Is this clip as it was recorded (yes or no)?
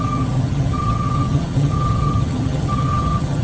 no